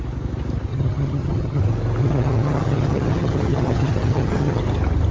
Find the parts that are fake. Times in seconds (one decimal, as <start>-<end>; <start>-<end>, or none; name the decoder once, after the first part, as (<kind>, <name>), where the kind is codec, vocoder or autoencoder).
0.7-1.6 (vocoder, HiFi-GAN); 2.0-4.6